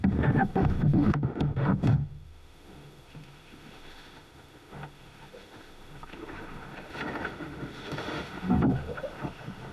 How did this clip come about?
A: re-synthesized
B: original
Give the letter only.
A